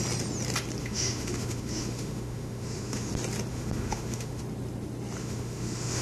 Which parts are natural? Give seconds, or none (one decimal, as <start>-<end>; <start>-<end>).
0.0-0.8; 3.1-3.5; 4.4-5.2